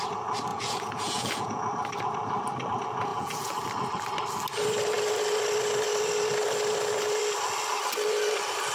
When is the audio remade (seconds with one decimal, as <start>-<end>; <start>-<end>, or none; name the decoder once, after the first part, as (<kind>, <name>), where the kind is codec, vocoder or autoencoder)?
0.5-1.6 (vocoder, Vocos); 3.1-3.6